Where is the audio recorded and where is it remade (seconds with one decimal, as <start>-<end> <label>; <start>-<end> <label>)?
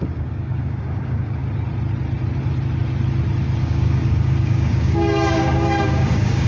0.0-1.4 remade; 1.4-3.6 recorded; 3.6-6.5 remade